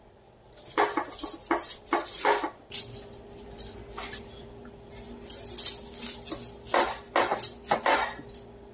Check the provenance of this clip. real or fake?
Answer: real